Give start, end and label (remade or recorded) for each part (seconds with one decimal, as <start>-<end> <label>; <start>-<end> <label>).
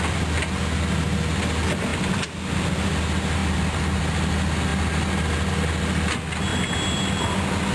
0.0-1.9 recorded; 1.9-2.5 remade; 2.5-3.4 recorded; 3.4-4.0 remade; 4.0-6.5 recorded; 6.5-7.1 remade; 7.1-7.7 recorded